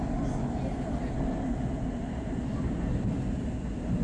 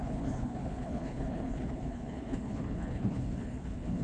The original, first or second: first